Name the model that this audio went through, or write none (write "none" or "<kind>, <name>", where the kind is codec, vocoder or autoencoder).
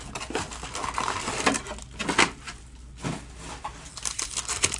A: none